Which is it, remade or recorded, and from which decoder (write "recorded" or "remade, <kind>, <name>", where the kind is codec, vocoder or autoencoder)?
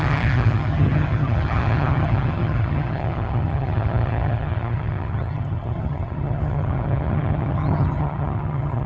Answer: remade, vocoder, HiFi-GAN